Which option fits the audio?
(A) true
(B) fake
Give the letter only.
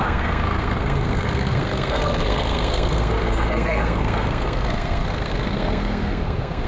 B